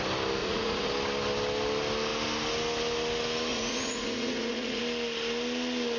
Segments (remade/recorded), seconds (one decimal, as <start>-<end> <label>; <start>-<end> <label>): 0.0-0.4 recorded; 0.4-0.9 remade; 0.9-3.5 recorded; 3.5-4.8 remade; 4.8-6.0 recorded